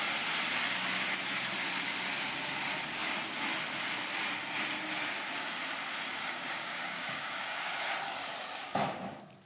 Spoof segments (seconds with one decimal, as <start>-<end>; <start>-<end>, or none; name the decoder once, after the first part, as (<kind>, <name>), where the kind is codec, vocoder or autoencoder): 6.1-7.9 (codec, DAC)

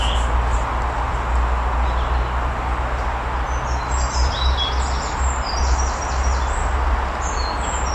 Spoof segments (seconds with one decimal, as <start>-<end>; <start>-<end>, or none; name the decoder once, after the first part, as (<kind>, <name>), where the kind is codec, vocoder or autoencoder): none